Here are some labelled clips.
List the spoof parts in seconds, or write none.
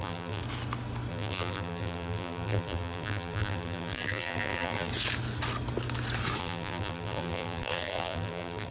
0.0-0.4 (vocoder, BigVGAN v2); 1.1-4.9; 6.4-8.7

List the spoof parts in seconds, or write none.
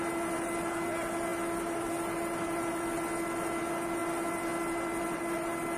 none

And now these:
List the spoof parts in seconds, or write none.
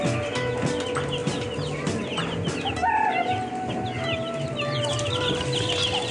none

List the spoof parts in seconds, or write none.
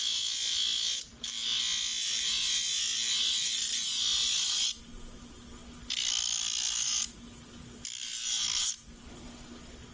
none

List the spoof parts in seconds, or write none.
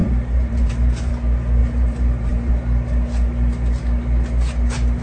0.0-1.1 (vocoder, BigVGAN v2); 1.6-2.5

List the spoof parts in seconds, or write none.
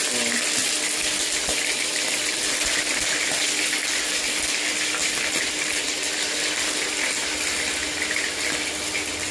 0.6-2.4 (vocoder, BigVGAN v2); 5.0-5.5; 7.8-8.7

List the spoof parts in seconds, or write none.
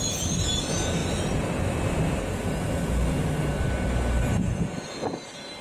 none